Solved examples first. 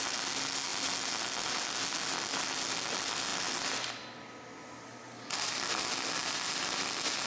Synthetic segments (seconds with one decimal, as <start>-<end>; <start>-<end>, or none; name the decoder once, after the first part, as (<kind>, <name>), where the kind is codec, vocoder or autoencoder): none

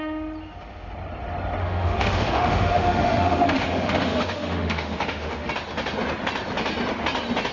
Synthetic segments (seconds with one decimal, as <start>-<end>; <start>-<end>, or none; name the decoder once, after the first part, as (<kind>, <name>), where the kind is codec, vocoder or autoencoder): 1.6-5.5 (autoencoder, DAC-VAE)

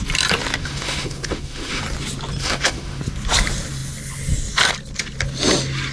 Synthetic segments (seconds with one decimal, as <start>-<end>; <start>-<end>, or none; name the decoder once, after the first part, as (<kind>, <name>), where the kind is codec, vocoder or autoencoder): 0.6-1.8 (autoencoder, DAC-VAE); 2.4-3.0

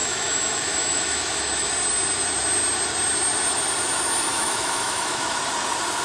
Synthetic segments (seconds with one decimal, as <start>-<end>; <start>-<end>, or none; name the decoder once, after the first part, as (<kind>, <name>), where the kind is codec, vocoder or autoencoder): 0.0-1.7 (autoencoder, DAC-VAE); 4.3-5.4

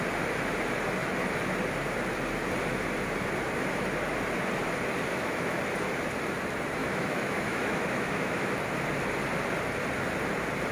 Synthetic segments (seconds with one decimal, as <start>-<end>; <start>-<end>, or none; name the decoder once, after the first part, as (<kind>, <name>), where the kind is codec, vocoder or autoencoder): 5.1-5.6 (autoencoder, DAC-VAE); 6.8-8.5